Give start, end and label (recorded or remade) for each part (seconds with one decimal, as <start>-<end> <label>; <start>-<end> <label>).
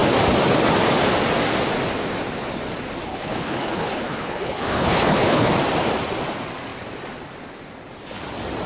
0.0-3.1 recorded; 3.1-5.5 remade; 5.5-8.7 recorded